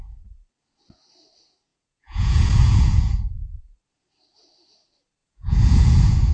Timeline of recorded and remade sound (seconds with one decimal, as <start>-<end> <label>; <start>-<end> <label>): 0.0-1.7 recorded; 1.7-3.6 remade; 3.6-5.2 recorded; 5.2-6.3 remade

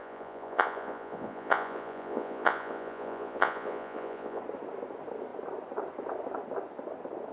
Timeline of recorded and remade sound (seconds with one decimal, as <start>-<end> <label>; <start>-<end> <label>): 0.0-4.4 remade; 4.4-7.3 recorded

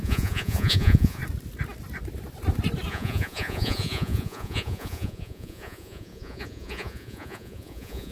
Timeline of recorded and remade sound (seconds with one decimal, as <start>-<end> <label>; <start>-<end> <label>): 0.0-1.2 remade; 1.2-2.9 recorded; 2.9-8.1 remade